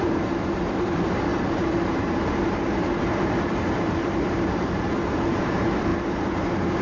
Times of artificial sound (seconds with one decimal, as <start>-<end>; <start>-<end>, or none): 0.0-5.9